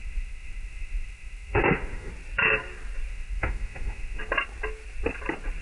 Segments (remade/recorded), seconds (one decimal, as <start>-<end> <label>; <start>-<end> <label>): 0.0-2.1 remade; 2.1-3.1 recorded; 3.1-4.2 remade; 4.2-5.6 recorded